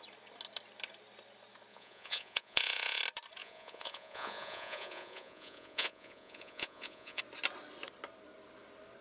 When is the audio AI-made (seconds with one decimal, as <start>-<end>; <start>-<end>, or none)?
1.7-3.0; 3.4-7.2